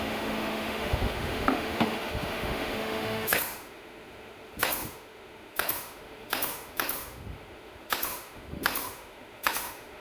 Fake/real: fake